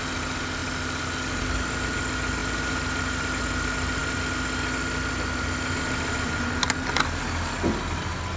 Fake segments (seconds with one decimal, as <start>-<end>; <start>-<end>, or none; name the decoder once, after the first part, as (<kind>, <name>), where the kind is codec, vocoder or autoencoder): none